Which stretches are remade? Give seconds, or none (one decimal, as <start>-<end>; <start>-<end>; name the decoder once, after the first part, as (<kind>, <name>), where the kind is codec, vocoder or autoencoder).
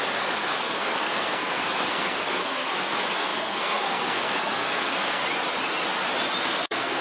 0.0-5.2 (codec, SNAC); 6.4-7.0